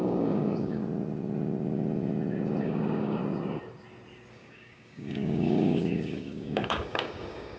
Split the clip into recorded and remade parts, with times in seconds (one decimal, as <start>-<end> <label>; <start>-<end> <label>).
0.0-0.8 remade; 0.8-2.6 recorded; 2.6-3.2 remade; 3.2-4.3 recorded; 4.3-7.6 remade